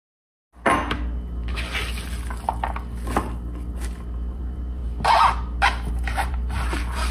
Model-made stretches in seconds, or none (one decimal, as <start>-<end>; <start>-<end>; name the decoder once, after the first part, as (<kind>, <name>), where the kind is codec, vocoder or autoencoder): 4.3-4.8 (vocoder, BigVGAN v2); 5.9-7.1